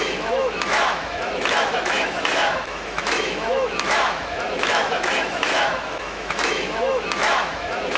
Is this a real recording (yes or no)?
no